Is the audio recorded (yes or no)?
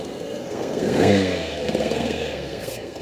no